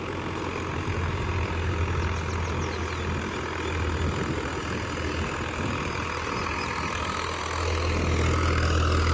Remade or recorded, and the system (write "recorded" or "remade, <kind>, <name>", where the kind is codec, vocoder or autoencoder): recorded